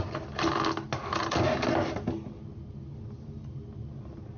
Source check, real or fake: real